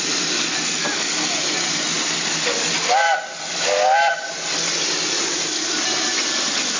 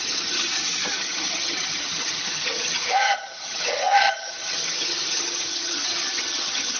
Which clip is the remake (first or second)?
second